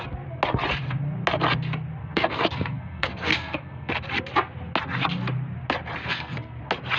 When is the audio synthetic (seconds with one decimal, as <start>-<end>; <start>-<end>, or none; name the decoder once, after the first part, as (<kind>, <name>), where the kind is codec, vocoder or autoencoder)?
2.0-3.9 (codec, SNAC); 6.0-6.6